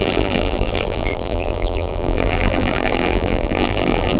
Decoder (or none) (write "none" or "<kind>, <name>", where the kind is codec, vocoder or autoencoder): vocoder, BigVGAN v2